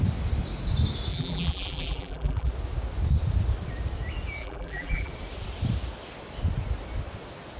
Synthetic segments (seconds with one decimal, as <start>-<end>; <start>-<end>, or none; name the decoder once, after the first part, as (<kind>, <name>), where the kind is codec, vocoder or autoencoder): 1.1-2.5 (vocoder, BigVGAN v2); 4.4-5.1